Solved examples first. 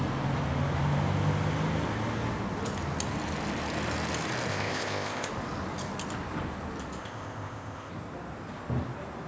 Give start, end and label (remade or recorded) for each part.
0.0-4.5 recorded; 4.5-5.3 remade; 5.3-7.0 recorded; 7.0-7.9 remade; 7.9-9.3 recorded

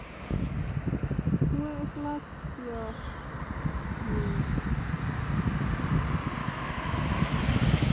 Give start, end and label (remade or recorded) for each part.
0.0-6.4 recorded; 6.4-7.4 remade; 7.4-7.9 recorded

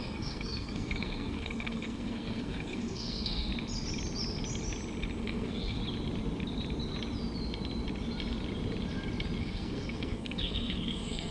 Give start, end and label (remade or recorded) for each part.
0.0-3.5 remade; 3.5-5.2 recorded; 5.2-5.8 remade; 5.8-9.4 recorded; 9.4-11.3 remade

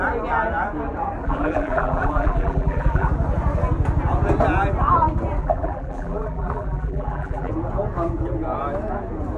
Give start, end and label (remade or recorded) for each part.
0.0-1.2 recorded; 1.2-3.1 remade; 3.1-5.4 recorded; 5.4-7.5 remade; 7.5-9.4 recorded

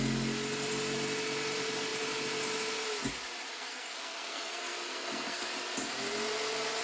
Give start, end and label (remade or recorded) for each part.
0.0-3.5 recorded; 3.5-5.5 remade; 5.5-6.8 recorded

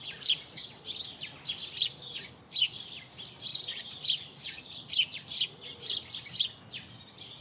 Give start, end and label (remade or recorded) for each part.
0.0-3.5 recorded; 3.5-5.3 remade; 5.3-7.4 recorded